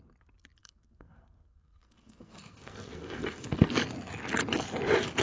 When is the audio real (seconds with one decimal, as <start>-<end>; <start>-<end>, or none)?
0.0-0.6; 3.7-5.2